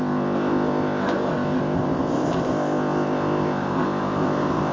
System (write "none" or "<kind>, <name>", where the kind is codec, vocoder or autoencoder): codec, ZipCodec